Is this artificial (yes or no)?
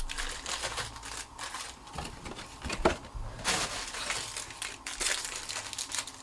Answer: no